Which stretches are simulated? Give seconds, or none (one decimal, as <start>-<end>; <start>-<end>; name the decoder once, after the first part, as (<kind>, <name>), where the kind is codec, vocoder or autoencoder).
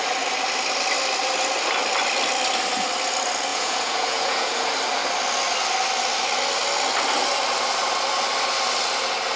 3.5-4.7 (vocoder, Vocos)